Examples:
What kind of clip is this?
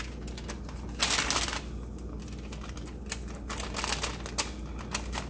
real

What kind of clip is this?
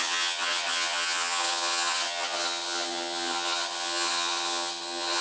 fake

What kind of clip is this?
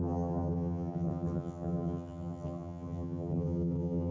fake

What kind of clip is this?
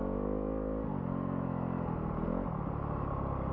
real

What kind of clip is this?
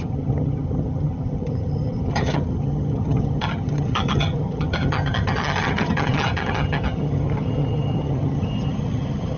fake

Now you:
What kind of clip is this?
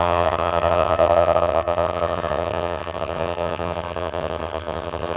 fake